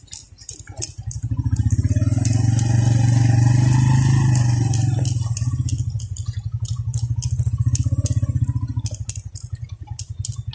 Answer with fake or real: real